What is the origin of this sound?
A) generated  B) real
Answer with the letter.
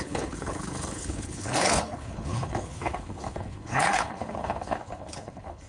A